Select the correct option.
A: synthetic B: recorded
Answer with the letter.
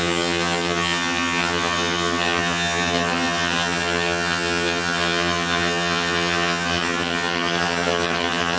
A